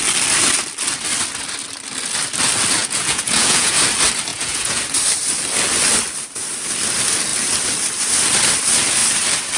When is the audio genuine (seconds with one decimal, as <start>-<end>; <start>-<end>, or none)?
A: 0.0-2.8; 3.8-4.3; 4.8-9.6